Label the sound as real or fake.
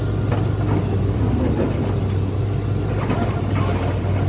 real